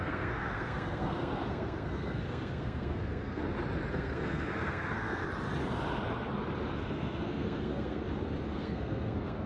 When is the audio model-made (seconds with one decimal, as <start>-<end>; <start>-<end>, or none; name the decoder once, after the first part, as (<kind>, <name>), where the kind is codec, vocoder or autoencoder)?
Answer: 0.0-3.4 (codec, SNAC); 3.9-5.2; 6.8-8.0; 8.5-9.5